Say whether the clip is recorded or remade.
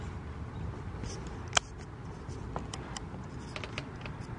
recorded